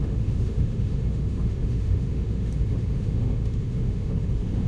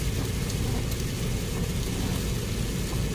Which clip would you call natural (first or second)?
second